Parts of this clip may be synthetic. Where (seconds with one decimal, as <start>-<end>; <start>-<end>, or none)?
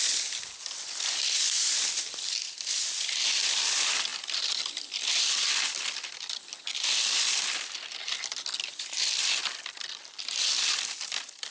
none